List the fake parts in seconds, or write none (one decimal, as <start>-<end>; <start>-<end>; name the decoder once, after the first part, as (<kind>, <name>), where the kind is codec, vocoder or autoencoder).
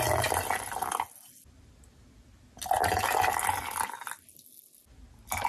none